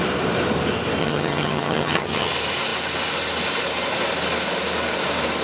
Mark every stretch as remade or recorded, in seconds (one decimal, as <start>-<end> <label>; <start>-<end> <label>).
0.0-1.0 recorded; 1.0-2.3 remade; 2.3-5.4 recorded